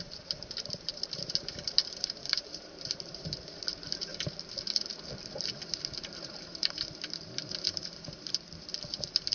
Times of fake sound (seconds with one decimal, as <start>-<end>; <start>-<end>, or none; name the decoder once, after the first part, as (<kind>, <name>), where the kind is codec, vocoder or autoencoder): 0.0-4.1 (vocoder, BigVGAN v2); 5.5-9.3